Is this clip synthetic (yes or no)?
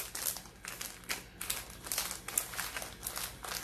no